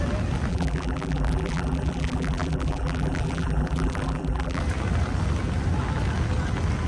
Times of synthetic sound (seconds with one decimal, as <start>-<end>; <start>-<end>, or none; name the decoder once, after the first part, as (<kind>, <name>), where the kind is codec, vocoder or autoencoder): 0.5-4.6 (vocoder, BigVGAN v2)